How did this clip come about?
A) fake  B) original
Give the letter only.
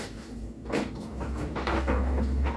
A